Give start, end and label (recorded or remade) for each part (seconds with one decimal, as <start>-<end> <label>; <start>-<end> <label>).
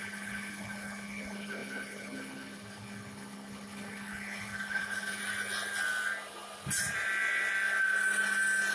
0.0-5.2 remade; 5.2-8.7 recorded